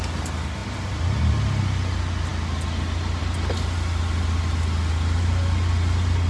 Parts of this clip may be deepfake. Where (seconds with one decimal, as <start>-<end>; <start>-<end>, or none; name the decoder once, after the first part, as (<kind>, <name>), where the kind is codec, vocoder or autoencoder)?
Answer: none